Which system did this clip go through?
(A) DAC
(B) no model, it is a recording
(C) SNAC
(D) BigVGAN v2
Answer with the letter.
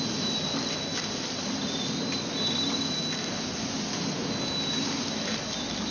B